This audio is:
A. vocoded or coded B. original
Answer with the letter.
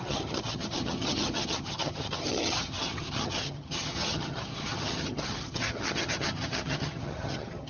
A